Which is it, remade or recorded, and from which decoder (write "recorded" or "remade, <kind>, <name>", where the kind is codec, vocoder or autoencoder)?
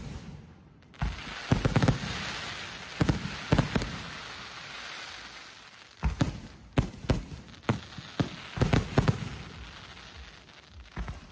recorded